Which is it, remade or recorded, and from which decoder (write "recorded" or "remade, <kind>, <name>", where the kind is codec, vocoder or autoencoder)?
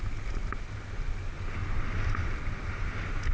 recorded